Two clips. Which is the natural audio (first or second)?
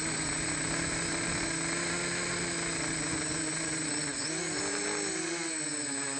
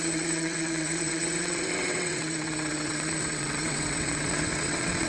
first